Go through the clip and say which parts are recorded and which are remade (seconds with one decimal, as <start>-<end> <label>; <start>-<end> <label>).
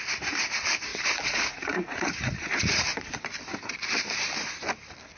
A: 0.0-0.9 recorded; 0.9-3.1 remade; 3.1-5.2 recorded